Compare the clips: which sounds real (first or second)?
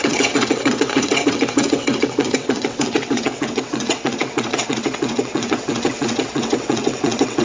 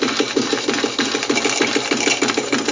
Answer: second